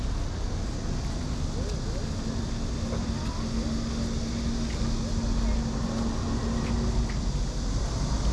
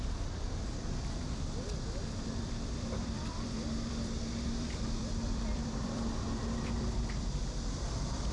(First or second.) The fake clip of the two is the second